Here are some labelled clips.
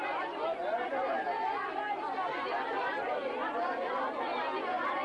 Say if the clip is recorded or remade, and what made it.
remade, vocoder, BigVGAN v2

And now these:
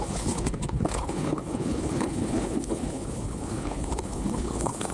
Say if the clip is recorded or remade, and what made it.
remade, codec, HILCodec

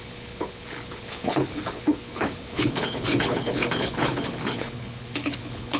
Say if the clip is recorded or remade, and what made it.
remade, codec, HILCodec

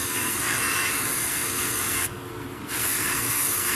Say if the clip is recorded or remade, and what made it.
remade, codec, SNAC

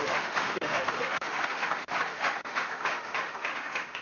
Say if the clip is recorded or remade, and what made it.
remade, autoencoder, DAC-VAE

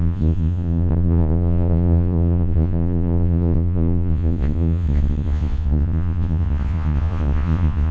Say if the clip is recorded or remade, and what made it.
remade, vocoder, Vocos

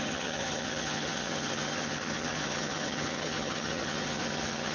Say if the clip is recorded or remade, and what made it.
remade, vocoder, HiFi-GAN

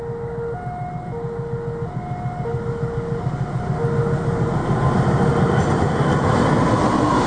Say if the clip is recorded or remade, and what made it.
recorded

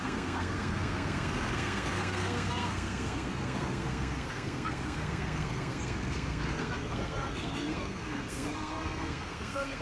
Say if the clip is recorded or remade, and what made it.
remade, codec, SNAC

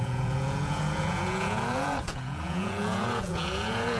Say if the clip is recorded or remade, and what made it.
remade, vocoder, Vocos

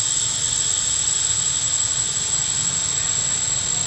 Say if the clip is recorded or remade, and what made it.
recorded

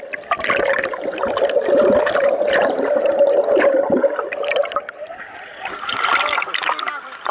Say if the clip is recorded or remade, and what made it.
remade, vocoder, BigVGAN v2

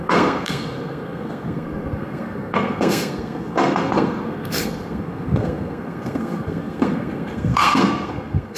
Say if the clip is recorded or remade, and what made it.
remade, codec, SNAC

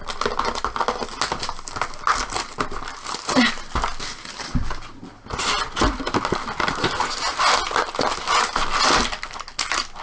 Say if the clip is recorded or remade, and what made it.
recorded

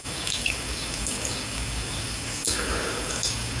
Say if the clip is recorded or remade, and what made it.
remade, codec, DAC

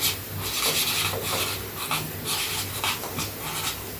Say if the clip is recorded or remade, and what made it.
recorded